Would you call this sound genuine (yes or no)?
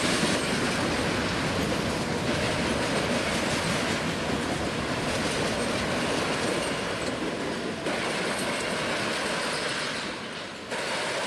yes